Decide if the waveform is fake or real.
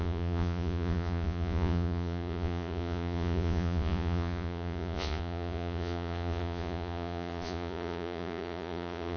fake